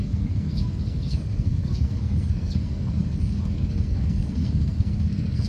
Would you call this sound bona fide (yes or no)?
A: no